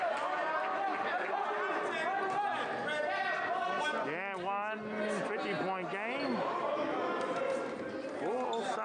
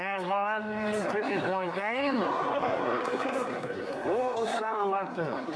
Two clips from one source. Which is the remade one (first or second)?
second